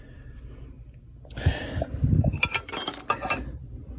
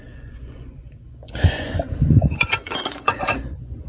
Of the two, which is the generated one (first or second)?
second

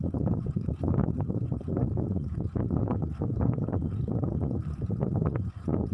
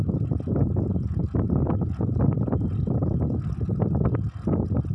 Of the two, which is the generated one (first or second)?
first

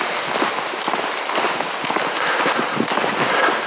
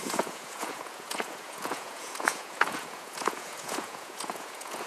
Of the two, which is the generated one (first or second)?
second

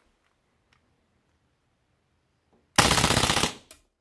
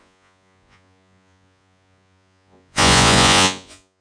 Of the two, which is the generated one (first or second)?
second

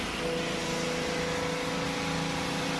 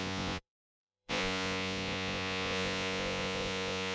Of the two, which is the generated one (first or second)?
second